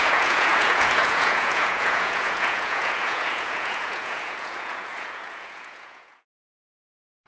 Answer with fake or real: fake